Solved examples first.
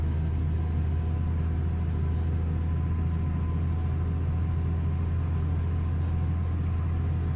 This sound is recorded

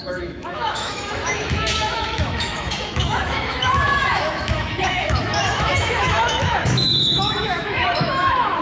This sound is remade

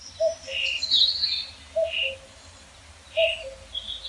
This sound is recorded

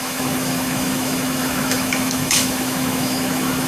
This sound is remade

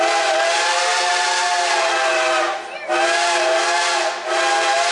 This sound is recorded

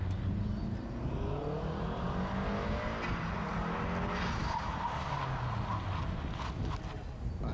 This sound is recorded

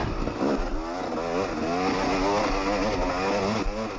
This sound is recorded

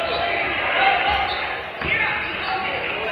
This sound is recorded